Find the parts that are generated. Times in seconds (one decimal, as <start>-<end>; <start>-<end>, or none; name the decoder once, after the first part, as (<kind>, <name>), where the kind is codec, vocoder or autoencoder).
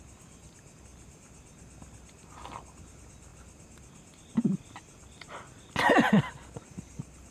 none